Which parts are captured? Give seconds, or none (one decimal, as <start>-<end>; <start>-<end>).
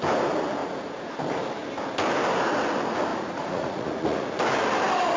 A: 0.0-0.6; 1.1-3.1; 4.3-5.2